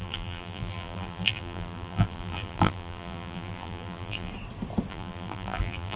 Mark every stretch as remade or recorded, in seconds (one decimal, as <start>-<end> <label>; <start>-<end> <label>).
0.0-4.3 remade; 4.3-4.9 recorded; 4.9-6.0 remade